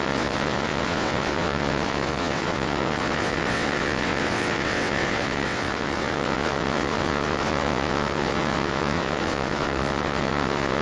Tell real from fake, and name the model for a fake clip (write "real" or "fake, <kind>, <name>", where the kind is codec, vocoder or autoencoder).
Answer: fake, vocoder, WaveNeXt